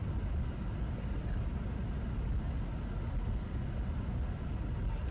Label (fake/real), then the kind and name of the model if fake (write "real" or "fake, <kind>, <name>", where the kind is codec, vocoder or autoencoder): real